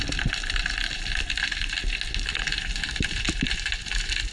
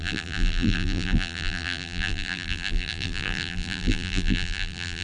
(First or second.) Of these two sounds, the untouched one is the first